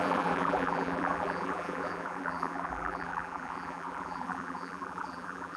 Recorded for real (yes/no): no